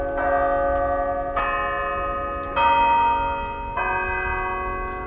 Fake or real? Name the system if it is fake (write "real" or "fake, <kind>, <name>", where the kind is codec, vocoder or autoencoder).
real